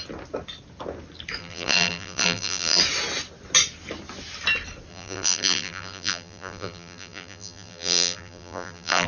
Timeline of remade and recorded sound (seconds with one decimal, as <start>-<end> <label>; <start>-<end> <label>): 0.0-1.4 recorded; 1.4-2.8 remade; 2.8-4.9 recorded; 4.9-9.1 remade